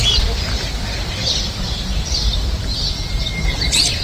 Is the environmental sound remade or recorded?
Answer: remade